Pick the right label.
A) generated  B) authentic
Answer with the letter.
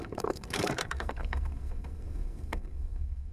A